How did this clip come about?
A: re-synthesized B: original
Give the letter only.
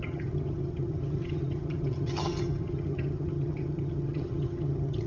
A